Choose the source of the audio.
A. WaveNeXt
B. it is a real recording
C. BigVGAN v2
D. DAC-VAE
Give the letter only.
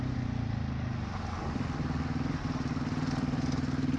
B